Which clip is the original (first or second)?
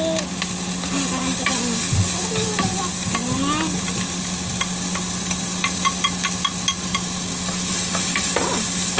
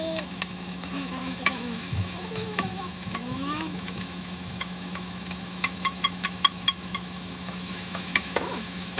first